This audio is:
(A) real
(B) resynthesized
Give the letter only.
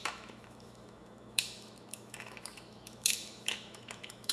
B